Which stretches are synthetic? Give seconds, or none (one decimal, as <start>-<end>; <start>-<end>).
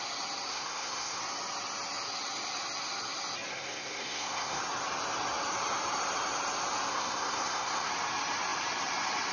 0.5-1.2; 3.5-4.6; 6.9-7.9